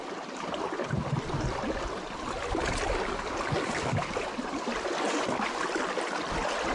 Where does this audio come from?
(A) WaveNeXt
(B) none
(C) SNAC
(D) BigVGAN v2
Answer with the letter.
B